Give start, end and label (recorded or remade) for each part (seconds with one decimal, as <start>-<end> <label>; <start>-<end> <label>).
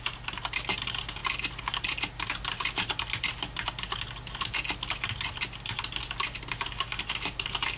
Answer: 0.0-7.8 recorded